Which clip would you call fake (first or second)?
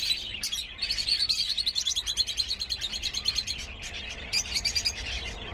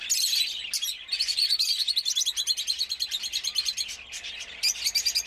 first